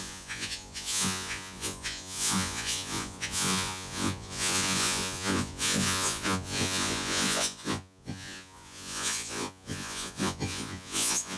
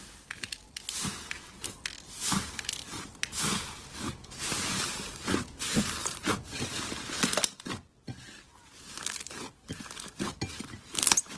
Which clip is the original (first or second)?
second